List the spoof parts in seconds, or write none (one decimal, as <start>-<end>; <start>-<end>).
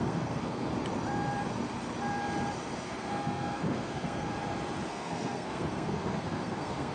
0.0-0.7; 2.8-4.3; 4.9-6.9